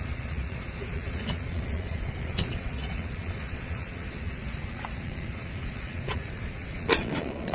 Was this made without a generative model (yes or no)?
no